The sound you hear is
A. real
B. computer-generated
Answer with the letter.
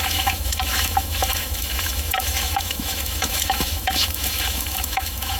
B